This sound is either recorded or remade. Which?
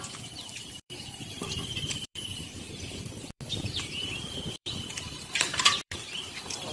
remade